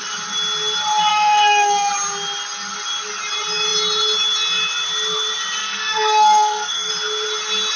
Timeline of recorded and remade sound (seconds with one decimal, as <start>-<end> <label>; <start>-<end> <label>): 0.0-1.1 recorded; 1.1-1.9 remade; 1.9-5.6 recorded; 5.6-6.9 remade; 6.9-7.8 recorded